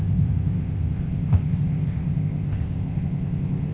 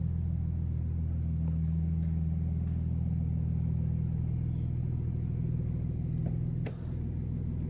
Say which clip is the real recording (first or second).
second